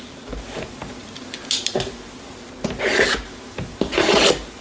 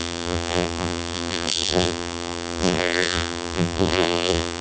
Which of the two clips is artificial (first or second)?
second